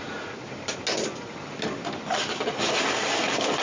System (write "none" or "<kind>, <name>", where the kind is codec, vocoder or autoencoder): none